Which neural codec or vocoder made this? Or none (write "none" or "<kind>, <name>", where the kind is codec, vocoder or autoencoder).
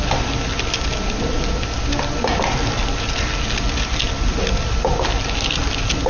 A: none